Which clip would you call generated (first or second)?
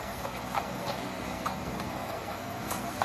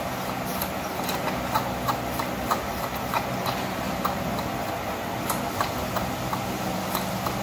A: first